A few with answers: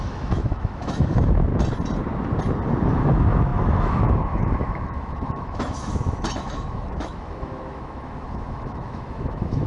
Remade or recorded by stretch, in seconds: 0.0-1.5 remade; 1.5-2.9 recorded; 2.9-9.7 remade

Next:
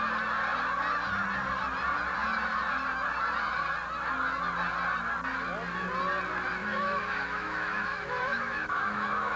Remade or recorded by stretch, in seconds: 0.0-6.6 recorded; 6.6-9.4 remade

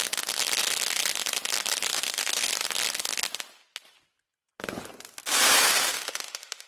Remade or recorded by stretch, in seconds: 0.0-1.9 recorded; 1.9-2.5 remade; 2.5-5.9 recorded; 5.9-6.7 remade

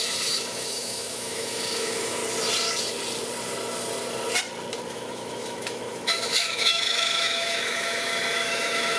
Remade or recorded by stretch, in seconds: 0.0-2.2 remade; 2.2-4.9 recorded; 4.9-9.0 remade

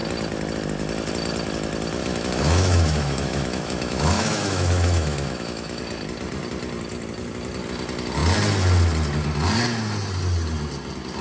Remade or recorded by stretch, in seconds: 0.0-2.0 recorded; 2.0-5.8 remade; 5.8-11.2 recorded